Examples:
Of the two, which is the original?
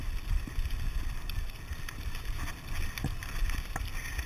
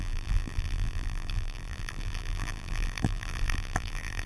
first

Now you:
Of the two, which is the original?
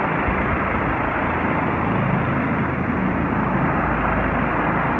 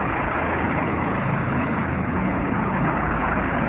first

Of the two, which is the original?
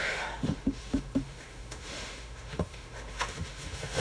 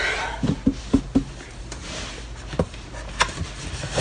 second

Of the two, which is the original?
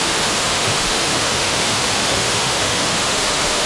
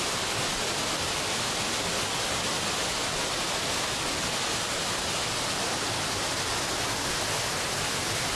second